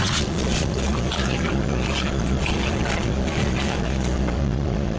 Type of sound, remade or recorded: remade